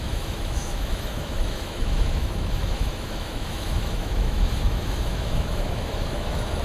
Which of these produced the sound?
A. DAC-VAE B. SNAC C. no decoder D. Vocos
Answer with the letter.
A